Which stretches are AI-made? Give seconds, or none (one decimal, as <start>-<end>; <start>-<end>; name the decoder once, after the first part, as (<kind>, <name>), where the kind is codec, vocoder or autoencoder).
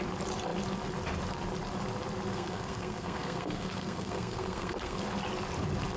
2.3-5.0 (codec, SNAC)